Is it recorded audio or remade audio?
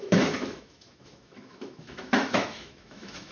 remade